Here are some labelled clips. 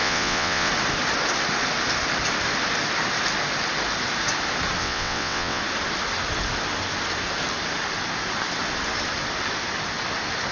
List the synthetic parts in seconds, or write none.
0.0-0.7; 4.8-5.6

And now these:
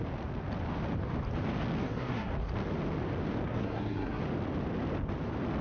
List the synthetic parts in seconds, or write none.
1.8-2.3; 3.5-4.2

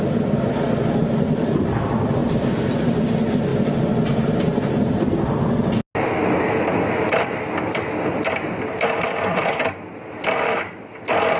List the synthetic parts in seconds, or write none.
none

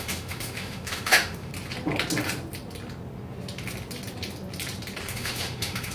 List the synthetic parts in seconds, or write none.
0.0-1.5; 5.0-5.9

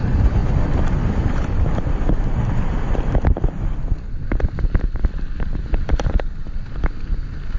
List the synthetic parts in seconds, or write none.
none

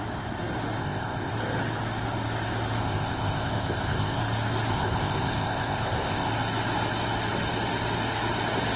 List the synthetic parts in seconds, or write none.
0.8-1.3; 2.8-4.2; 4.7-6.3

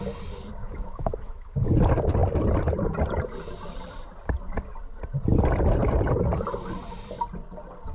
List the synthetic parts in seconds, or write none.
0.6-1.5